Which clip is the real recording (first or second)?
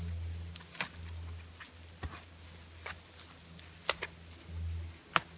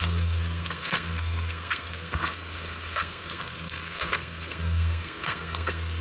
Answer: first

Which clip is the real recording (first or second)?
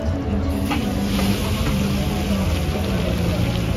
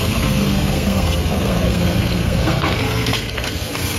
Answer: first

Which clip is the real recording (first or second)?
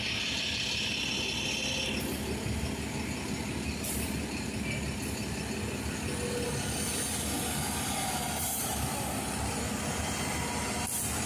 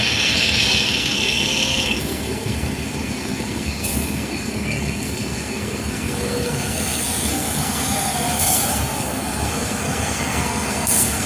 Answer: first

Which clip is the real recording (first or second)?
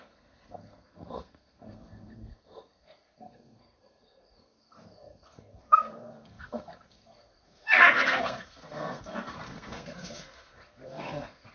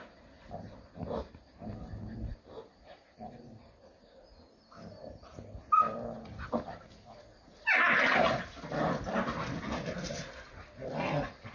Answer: second